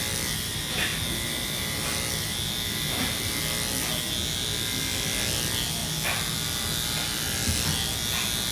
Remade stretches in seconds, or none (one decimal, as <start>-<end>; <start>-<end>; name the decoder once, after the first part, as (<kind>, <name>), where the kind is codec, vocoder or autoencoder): none